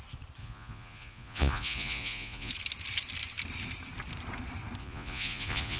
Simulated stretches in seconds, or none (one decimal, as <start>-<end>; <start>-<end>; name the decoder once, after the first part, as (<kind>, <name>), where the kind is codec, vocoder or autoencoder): 0.4-2.5 (vocoder, Vocos); 4.8-5.8